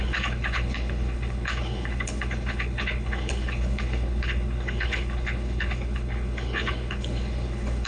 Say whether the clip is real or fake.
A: fake